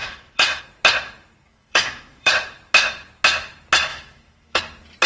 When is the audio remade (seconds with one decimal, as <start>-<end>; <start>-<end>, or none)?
0.0-0.6; 1.5-2.3; 3.9-4.6